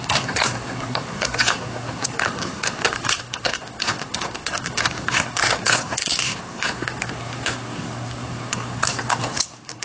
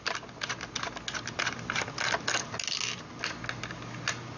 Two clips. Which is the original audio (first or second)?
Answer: second